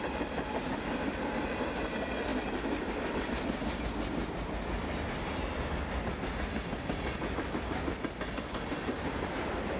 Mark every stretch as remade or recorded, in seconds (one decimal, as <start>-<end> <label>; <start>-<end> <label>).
0.0-9.8 recorded